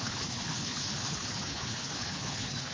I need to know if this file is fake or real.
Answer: fake